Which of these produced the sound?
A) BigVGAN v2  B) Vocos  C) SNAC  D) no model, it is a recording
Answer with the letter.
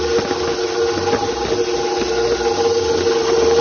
D